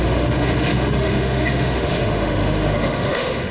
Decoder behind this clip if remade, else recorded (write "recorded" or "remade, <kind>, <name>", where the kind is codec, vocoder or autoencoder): remade, autoencoder, DAC-VAE